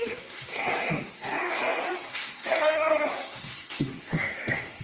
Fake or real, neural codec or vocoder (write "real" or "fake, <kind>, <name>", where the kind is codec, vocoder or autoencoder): fake, codec, SNAC